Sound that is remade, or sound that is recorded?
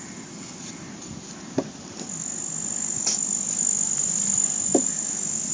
recorded